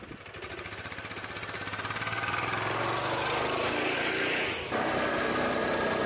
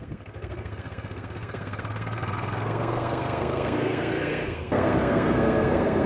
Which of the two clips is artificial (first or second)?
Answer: second